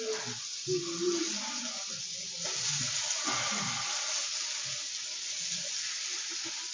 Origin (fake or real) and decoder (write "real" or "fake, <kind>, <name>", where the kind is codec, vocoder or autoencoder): real